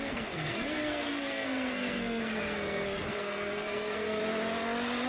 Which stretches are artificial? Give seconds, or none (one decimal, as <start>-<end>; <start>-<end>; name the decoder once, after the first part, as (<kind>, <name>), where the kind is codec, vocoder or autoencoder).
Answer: 0.0-4.2 (codec, SNAC)